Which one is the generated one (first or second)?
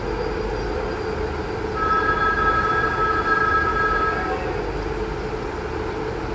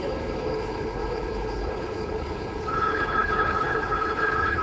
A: second